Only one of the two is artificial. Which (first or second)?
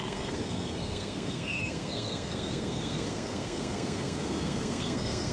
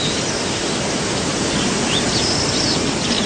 first